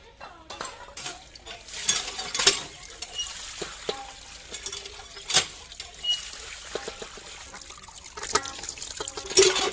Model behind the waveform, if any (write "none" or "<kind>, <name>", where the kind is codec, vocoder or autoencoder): none